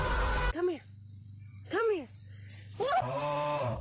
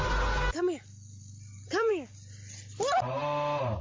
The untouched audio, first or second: second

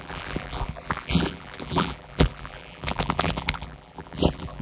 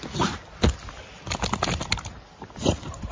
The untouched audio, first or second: second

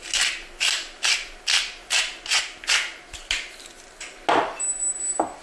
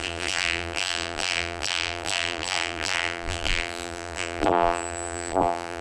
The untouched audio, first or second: first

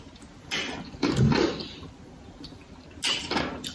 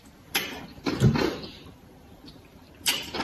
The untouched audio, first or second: first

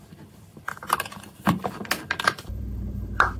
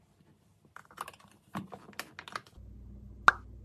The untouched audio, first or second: second